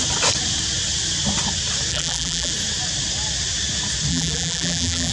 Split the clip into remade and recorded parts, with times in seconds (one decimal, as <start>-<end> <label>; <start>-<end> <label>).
0.0-1.9 recorded; 1.9-2.5 remade; 2.5-4.1 recorded; 4.1-5.1 remade